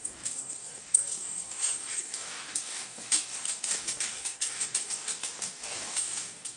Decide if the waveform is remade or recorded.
remade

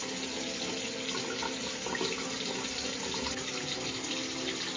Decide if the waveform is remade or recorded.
recorded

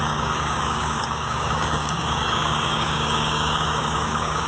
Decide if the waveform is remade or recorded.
remade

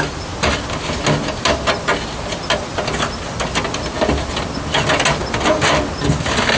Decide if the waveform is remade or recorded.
recorded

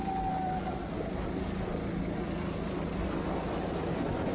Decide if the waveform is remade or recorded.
recorded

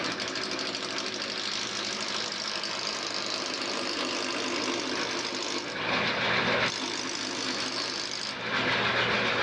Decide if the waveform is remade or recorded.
recorded